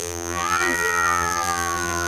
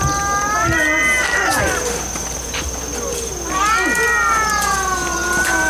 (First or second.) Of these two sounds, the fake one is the first